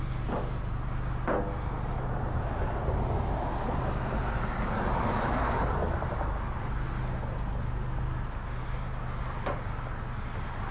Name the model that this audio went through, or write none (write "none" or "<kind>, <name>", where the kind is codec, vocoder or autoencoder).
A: none